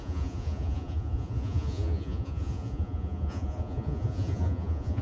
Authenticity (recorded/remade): remade